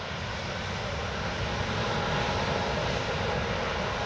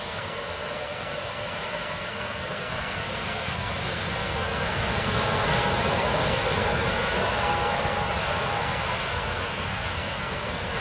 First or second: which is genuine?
first